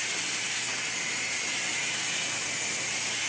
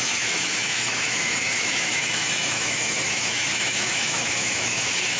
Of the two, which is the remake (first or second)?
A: second